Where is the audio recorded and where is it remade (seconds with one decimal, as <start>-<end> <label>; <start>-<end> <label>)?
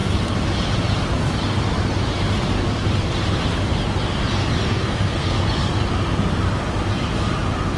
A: 0.0-4.7 recorded; 4.7-5.4 remade; 5.4-7.8 recorded